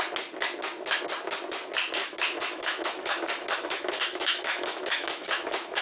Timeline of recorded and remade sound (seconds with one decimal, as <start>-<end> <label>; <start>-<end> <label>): 0.0-2.0 recorded; 2.0-5.8 remade